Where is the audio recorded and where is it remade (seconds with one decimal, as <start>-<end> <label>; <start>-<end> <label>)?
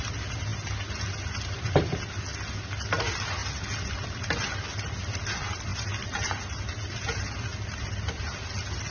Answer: 0.0-8.9 recorded